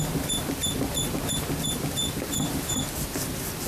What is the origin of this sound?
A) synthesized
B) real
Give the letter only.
A